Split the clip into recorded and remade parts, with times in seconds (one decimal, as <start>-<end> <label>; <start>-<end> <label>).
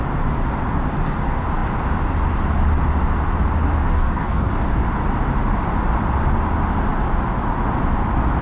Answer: 0.0-3.9 recorded; 3.9-4.5 remade; 4.5-8.4 recorded